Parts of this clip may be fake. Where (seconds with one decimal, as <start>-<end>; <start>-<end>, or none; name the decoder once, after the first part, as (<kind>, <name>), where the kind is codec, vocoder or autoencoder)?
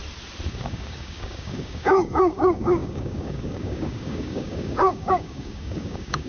0.5-6.3 (codec, DAC)